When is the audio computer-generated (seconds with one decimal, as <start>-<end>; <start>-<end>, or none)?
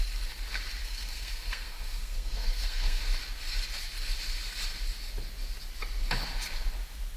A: 0.8-3.0